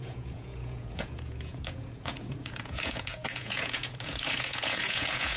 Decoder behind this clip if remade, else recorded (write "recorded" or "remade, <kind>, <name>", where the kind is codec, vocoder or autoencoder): remade, vocoder, Vocos